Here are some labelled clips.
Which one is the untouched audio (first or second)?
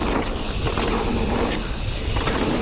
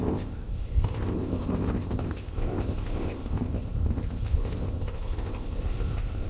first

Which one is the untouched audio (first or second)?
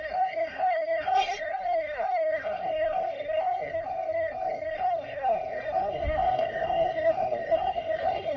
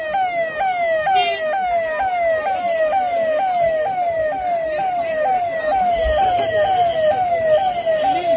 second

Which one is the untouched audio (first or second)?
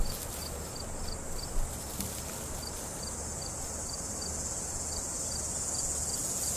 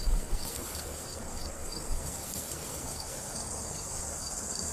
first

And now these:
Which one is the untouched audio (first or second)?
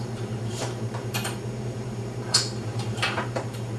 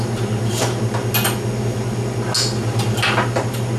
second